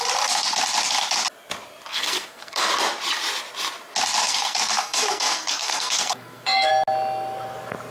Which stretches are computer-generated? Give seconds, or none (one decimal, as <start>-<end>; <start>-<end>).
1.9-2.7; 4.2-6.7